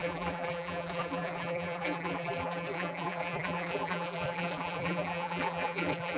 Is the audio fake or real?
fake